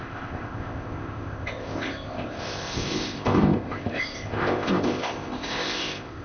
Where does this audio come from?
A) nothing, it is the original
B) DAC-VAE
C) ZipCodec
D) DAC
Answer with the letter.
C